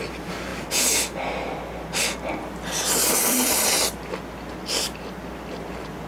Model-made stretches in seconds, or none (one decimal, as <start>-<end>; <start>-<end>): 3.0-3.7